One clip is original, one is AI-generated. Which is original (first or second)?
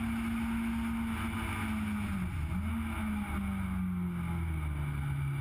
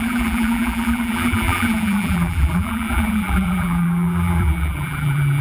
first